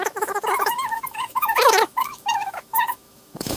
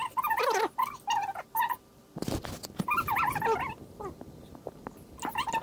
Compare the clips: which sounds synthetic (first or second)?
first